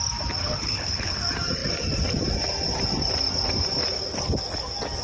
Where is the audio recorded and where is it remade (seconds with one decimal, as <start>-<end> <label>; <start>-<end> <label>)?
0.0-0.4 recorded; 0.4-1.2 remade; 1.2-5.0 recorded